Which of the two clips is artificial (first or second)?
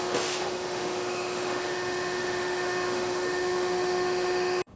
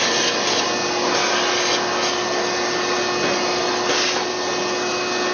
first